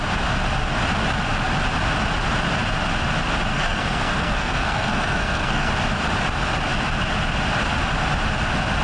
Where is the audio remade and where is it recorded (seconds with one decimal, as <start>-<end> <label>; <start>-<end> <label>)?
0.0-3.5 recorded; 3.5-5.7 remade; 5.7-8.8 recorded